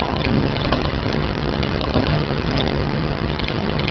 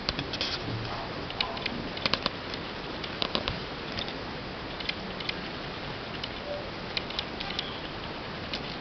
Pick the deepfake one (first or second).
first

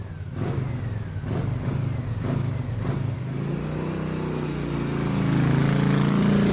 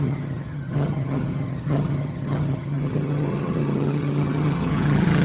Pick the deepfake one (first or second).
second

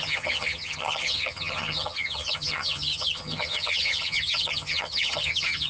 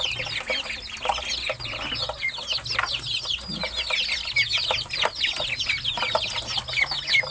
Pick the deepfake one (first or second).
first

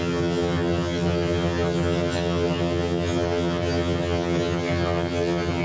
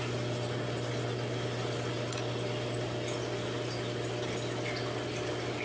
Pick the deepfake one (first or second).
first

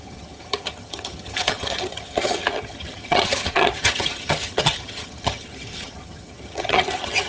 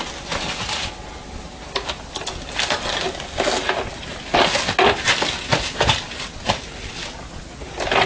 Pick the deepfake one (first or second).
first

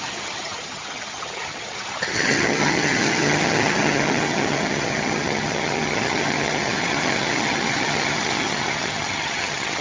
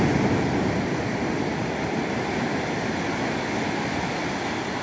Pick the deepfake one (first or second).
first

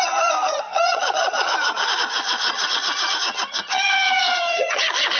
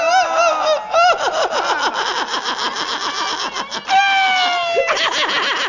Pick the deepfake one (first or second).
first